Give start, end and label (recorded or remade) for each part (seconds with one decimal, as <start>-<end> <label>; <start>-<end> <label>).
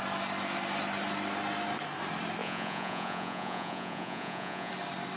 0.0-2.4 recorded; 2.4-4.7 remade; 4.7-5.2 recorded